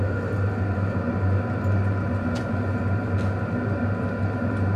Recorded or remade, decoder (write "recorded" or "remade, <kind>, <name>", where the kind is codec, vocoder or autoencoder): recorded